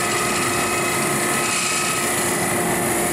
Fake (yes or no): no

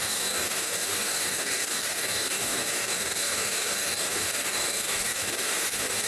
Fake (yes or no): yes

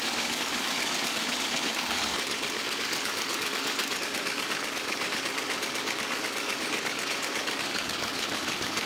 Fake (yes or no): yes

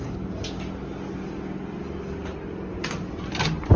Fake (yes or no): no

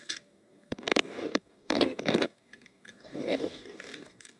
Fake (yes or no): yes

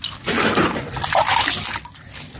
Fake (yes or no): no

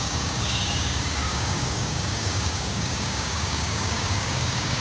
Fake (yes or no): yes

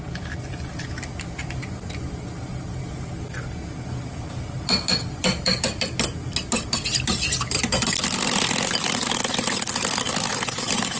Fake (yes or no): no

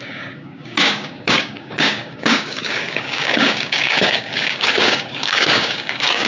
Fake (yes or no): yes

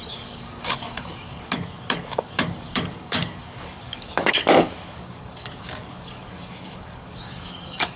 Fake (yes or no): yes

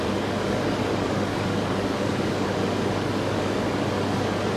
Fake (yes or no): yes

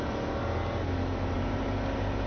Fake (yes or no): no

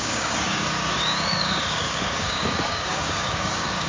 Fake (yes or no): yes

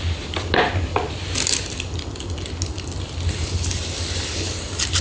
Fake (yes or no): no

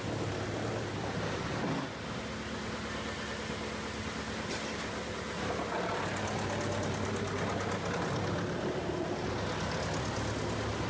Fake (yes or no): no